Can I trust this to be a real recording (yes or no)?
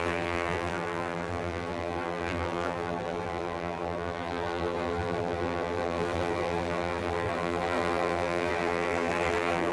no